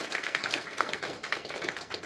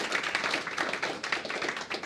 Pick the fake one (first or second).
first